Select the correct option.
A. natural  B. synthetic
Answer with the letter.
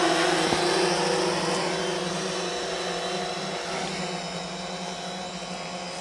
A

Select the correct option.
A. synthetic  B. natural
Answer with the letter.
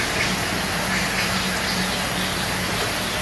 B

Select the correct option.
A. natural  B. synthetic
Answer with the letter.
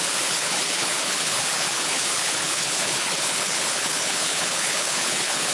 B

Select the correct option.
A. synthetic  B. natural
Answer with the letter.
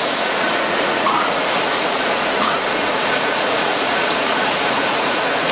A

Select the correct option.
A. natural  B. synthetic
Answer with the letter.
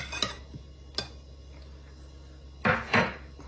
A